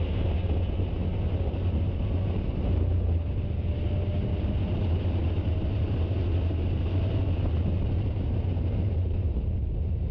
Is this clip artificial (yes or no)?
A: no